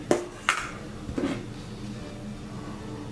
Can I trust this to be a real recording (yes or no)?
yes